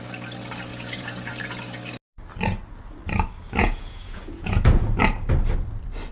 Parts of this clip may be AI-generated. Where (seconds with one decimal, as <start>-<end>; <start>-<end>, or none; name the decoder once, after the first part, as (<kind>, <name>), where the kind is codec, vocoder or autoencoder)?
0.7-1.3 (vocoder, Vocos); 3.6-5.0